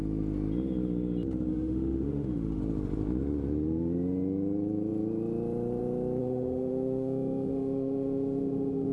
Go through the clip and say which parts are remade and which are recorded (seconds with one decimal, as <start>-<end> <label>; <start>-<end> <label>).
0.0-1.5 recorded; 1.5-2.6 remade; 2.6-6.2 recorded; 6.2-8.9 remade